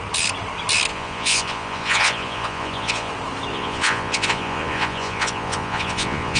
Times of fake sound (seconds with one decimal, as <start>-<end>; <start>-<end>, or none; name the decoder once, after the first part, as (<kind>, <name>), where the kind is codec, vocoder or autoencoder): 0.9-3.1 (vocoder, Vocos); 3.5-6.4